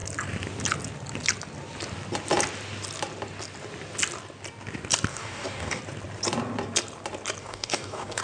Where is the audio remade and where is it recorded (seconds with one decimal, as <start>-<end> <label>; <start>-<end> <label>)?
0.0-5.1 recorded; 5.1-5.8 remade; 5.8-7.4 recorded; 7.4-8.2 remade

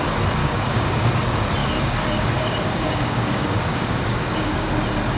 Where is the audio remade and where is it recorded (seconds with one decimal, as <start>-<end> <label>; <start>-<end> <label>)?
0.0-0.4 recorded; 0.4-1.1 remade; 1.1-1.6 recorded; 1.6-4.7 remade; 4.7-5.2 recorded

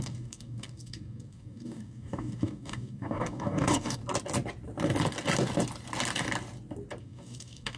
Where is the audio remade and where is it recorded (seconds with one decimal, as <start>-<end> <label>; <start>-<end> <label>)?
0.0-4.0 remade; 4.0-7.0 recorded; 7.0-7.8 remade

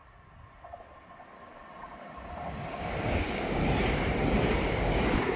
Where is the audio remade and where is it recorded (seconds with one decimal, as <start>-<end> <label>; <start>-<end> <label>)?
0.0-2.7 recorded; 2.7-3.6 remade; 3.6-4.7 recorded; 4.7-5.4 remade

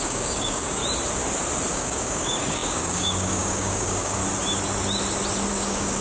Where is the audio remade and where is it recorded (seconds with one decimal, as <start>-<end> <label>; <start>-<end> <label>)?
0.0-0.8 remade; 0.8-1.7 recorded; 1.7-4.2 remade; 4.2-5.5 recorded; 5.5-6.0 remade

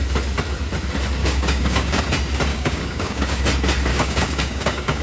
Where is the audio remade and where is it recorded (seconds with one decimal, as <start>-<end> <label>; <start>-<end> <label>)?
0.0-1.2 recorded; 1.2-2.0 remade; 2.0-2.5 recorded; 2.5-3.4 remade; 3.4-3.9 recorded; 3.9-5.0 remade

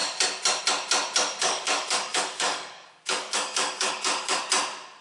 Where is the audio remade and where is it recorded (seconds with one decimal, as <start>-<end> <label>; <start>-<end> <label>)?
0.0-1.4 recorded; 1.4-4.4 remade; 4.4-5.0 recorded

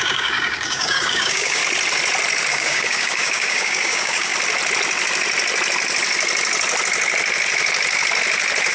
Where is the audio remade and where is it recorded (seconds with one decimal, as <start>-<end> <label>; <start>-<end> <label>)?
0.0-1.6 remade; 1.6-2.5 recorded; 2.5-4.3 remade; 4.3-8.7 recorded